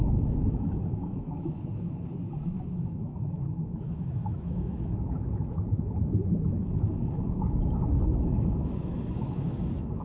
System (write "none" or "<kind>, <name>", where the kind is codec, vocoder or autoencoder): autoencoder, DAC-VAE